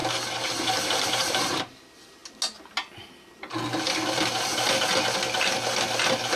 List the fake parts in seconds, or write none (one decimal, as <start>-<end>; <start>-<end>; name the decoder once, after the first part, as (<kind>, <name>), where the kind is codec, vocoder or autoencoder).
0.0-1.8 (vocoder, BigVGAN v2)